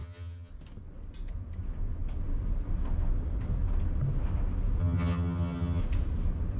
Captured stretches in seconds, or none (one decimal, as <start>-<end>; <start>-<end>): 0.5-4.8; 5.8-6.6